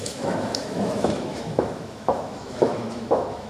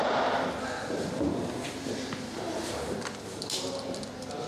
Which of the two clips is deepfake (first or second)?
first